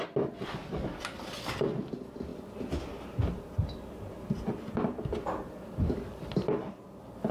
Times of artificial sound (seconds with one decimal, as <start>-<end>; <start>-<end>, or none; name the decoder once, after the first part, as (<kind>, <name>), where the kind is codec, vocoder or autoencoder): none